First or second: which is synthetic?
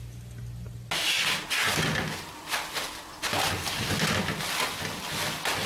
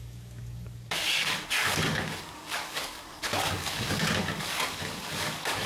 second